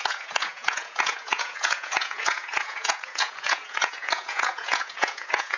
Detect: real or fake fake